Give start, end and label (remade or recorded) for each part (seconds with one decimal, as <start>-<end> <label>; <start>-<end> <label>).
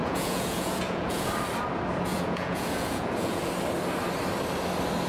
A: 0.0-1.3 remade; 1.3-2.1 recorded; 2.1-3.5 remade; 3.5-5.1 recorded